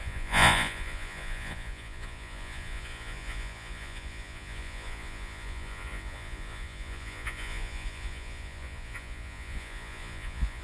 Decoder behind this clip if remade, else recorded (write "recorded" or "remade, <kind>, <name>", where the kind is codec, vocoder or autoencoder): remade, vocoder, Vocos